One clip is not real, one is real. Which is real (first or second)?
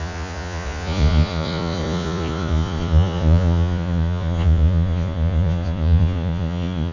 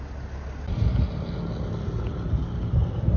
second